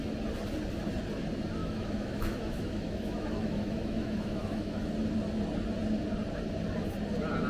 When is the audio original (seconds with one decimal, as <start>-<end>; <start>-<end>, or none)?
0.0-1.6; 4.9-7.5